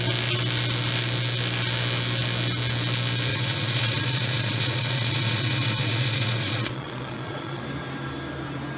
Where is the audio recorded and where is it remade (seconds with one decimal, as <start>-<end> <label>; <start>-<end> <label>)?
0.0-3.3 recorded; 3.3-7.6 remade; 7.6-8.8 recorded